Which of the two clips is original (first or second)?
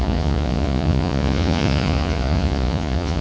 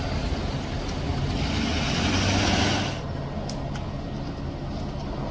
second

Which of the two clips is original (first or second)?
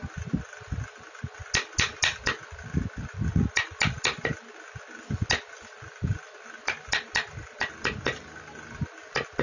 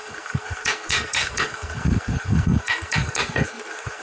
first